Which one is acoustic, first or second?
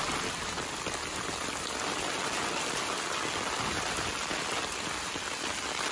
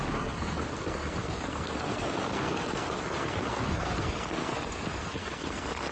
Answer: first